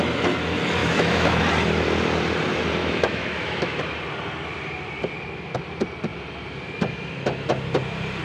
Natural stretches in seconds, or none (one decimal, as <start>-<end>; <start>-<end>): 0.0-0.8; 1.4-2.8; 3.8-8.2